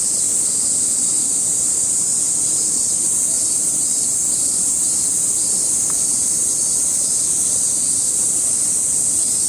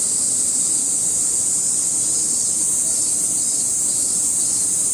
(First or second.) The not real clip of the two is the first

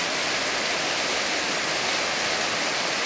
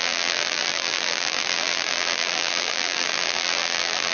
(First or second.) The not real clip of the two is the second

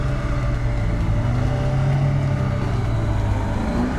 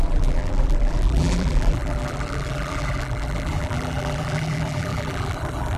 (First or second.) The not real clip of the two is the second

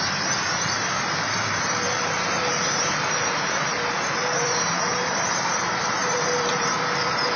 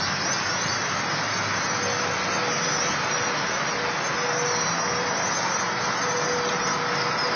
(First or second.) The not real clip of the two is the first